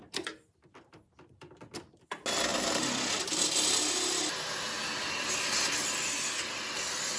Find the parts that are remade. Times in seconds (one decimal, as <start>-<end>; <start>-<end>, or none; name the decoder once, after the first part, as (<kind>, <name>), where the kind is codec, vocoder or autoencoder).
none